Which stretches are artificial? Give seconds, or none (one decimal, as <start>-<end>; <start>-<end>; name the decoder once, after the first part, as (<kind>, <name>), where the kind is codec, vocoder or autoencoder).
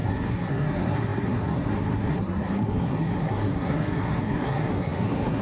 0.0-5.4 (codec, SNAC)